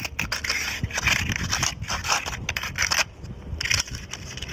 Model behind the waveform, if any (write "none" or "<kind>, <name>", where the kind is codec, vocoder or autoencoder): none